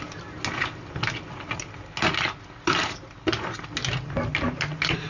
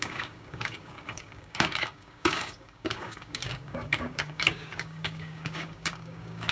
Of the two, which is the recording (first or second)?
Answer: first